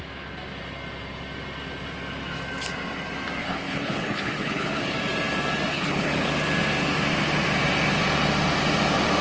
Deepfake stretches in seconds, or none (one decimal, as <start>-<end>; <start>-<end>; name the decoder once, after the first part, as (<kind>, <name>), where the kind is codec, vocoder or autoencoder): 3.4-4.8 (codec, HILCodec); 5.7-6.3